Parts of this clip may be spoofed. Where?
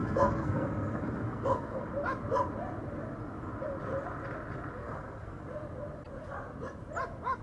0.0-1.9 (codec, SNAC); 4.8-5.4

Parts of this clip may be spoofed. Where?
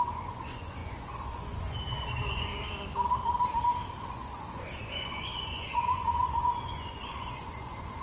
0.0-2.5 (vocoder, Vocos); 4.1-8.0